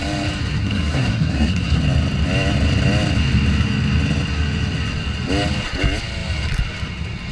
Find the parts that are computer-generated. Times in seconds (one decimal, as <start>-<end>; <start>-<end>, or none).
0.6-1.8